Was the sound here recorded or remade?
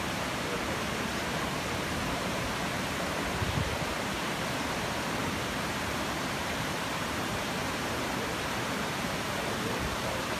remade